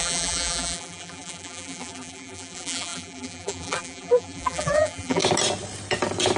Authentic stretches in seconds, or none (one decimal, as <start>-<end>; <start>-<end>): 5.2-6.4